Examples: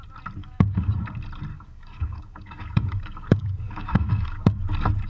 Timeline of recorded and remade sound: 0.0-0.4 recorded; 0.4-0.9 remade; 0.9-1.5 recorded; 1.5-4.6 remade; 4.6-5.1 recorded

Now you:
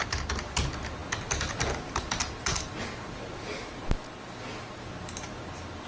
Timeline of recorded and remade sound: 0.0-5.9 recorded

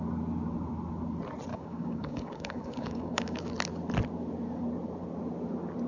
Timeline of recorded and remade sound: 0.0-1.5 recorded; 1.5-3.5 remade; 3.5-5.9 recorded

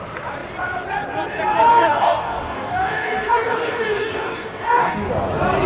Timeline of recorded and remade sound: 0.0-1.7 recorded; 1.7-5.1 remade; 5.1-5.7 recorded

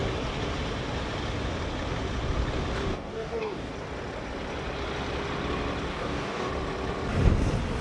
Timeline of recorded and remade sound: 0.0-2.9 recorded; 2.9-3.7 remade; 3.7-5.9 recorded; 5.9-6.5 remade; 6.5-7.8 recorded

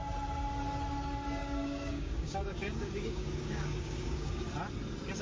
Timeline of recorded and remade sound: 0.0-1.4 recorded; 1.4-4.5 remade; 4.5-5.2 recorded